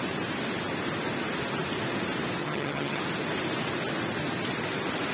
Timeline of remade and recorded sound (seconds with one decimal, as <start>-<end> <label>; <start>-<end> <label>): 0.0-2.4 recorded; 2.4-3.0 remade; 3.0-5.1 recorded